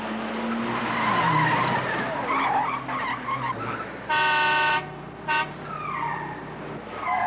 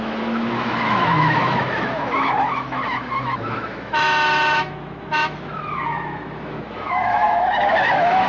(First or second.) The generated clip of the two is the second